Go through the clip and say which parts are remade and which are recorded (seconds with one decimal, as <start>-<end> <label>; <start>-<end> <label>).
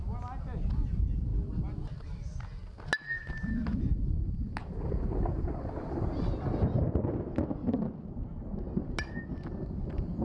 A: 0.0-10.2 recorded